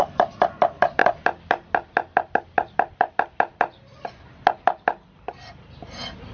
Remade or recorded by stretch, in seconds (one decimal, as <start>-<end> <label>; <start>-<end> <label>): 0.0-6.3 recorded

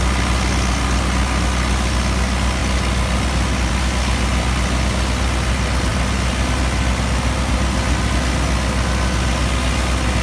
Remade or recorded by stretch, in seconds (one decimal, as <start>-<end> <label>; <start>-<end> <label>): 0.0-10.2 recorded

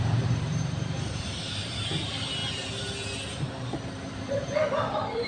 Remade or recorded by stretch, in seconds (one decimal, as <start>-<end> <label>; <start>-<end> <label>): 0.0-2.4 remade; 2.4-3.3 recorded; 3.3-5.3 remade